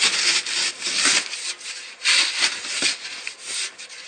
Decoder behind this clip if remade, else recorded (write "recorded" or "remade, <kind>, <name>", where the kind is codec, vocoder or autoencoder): recorded